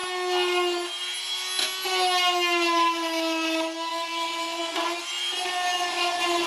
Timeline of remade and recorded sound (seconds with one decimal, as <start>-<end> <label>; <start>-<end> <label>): 0.0-3.9 recorded; 3.9-6.5 remade